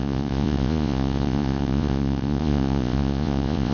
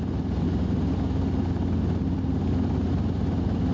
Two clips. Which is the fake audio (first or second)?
first